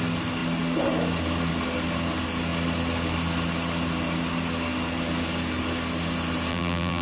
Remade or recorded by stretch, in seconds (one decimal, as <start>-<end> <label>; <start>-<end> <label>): 0.0-6.5 recorded; 6.5-7.0 remade